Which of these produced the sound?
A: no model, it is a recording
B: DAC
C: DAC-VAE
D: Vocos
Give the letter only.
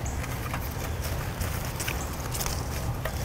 A